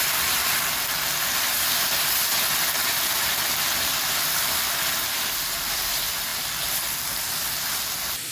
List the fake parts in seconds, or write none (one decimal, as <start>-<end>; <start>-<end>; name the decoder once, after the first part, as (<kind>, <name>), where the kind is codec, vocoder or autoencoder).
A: none